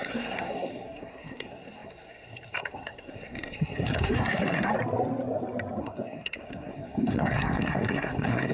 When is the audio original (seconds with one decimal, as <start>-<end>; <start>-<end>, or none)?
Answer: 4.7-5.8